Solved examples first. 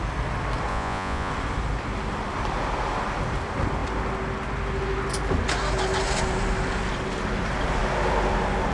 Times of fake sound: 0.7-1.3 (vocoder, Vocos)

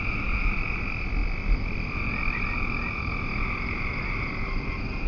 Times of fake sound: none

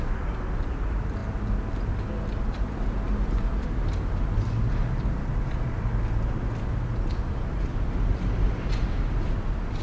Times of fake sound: 7.7-8.3 (vocoder, BigVGAN v2)

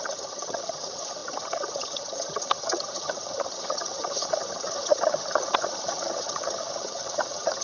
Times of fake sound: 0.0-7.6 (vocoder, HiFi-GAN)